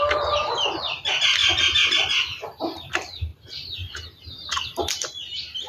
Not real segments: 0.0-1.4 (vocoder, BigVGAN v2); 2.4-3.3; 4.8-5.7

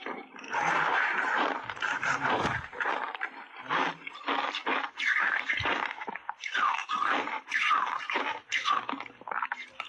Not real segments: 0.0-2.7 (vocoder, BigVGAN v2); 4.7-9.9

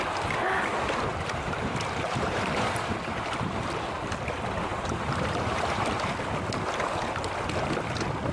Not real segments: 1.1-2.9 (vocoder, BigVGAN v2); 4.7-6.1

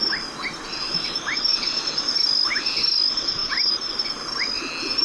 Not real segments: 3.4-3.9 (vocoder, BigVGAN v2)

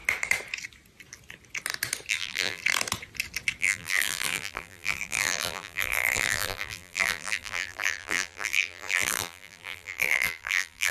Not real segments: 2.1-2.6 (vocoder, BigVGAN v2); 3.6-10.9

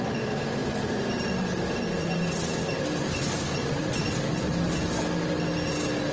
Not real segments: 0.6-4.3 (vocoder, BigVGAN v2)

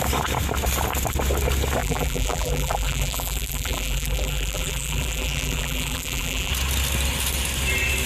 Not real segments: 1.8-6.5 (vocoder, BigVGAN v2)